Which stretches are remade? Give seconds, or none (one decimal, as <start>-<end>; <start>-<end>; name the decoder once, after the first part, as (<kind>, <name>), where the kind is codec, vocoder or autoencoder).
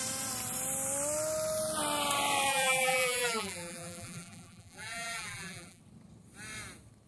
2.5-5.8 (vocoder, BigVGAN v2)